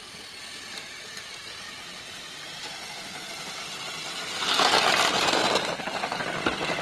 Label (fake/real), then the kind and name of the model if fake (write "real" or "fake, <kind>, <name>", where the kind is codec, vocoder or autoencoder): real